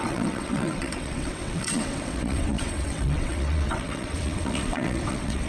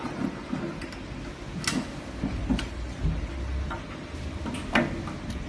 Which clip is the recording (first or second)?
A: second